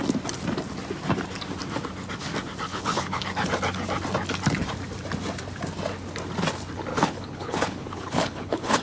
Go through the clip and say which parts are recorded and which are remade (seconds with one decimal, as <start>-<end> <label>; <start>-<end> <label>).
0.0-2.7 recorded; 2.7-3.3 remade; 3.3-6.9 recorded; 6.9-8.8 remade